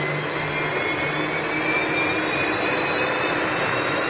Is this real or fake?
real